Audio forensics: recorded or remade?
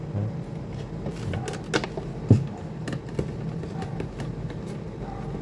recorded